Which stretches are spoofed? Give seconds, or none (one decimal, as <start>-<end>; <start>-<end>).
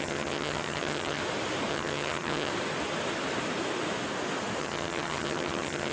0.0-1.2; 1.7-2.5; 4.6-5.9